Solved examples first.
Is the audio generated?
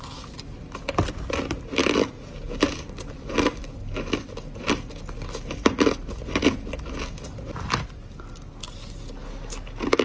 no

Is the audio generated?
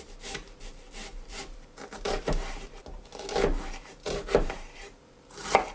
yes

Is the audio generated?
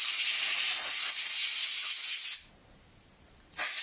no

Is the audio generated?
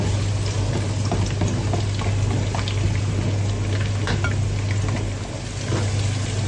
no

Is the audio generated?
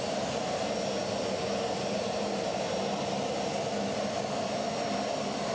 no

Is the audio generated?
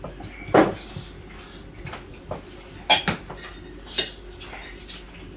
no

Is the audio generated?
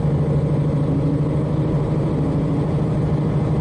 no